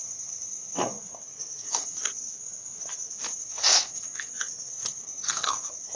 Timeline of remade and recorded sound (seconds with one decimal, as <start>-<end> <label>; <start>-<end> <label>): 0.0-6.0 remade

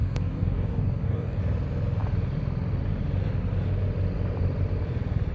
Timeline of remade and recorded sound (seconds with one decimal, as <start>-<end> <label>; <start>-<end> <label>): 0.0-1.4 remade; 1.4-5.3 recorded

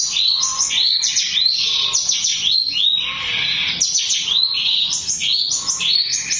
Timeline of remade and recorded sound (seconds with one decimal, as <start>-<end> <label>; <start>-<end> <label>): 0.0-0.5 recorded; 0.5-1.1 remade; 1.1-2.3 recorded; 2.3-2.9 remade; 2.9-5.2 recorded; 5.2-5.8 remade; 5.8-6.4 recorded

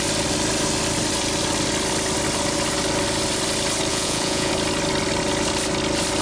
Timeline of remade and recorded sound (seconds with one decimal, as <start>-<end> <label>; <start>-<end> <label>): 0.0-3.9 recorded; 3.9-4.5 remade; 4.5-6.2 recorded